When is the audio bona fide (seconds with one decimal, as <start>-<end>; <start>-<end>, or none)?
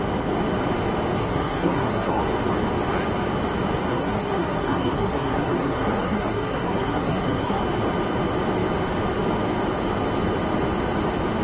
0.0-1.2; 2.2-3.9; 7.6-11.4